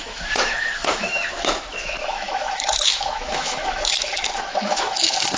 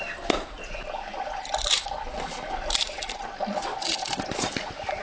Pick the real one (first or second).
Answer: second